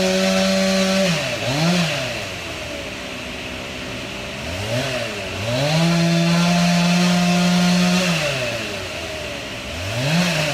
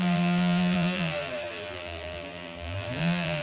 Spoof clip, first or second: second